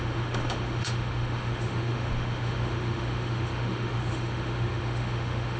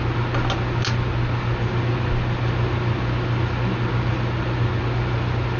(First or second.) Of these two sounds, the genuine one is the second